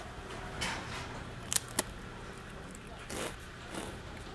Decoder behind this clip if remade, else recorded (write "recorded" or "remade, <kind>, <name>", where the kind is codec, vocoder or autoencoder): recorded